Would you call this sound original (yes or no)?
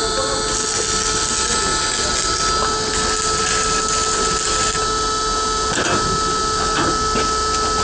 yes